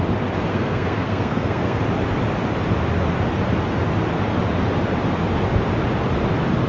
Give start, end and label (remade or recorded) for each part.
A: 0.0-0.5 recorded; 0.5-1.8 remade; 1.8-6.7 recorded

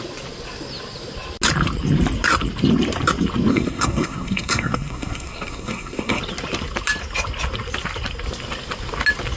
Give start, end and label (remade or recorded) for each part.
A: 0.0-3.5 recorded; 3.5-6.2 remade; 6.2-9.4 recorded

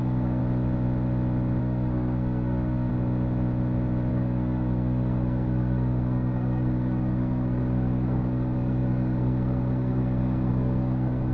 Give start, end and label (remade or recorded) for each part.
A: 0.0-0.4 remade; 0.4-1.6 recorded; 1.6-2.9 remade; 2.9-4.1 recorded; 4.1-11.3 remade

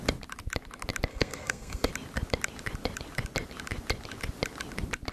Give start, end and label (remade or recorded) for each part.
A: 0.0-1.1 recorded; 1.1-1.9 remade; 1.9-5.1 recorded